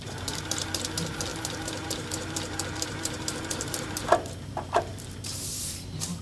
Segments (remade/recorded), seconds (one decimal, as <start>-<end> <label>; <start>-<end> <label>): 0.0-6.2 remade